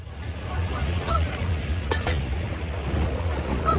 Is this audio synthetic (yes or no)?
yes